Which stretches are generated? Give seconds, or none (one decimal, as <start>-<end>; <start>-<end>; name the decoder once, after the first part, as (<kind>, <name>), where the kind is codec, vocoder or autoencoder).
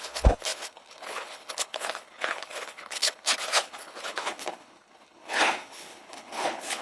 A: 0.0-6.8 (codec, HILCodec)